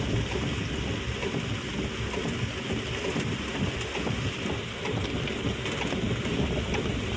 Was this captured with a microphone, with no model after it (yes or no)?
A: yes